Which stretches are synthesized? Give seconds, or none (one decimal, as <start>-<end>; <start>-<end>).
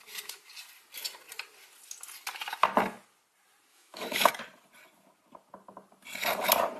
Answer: 3.7-4.3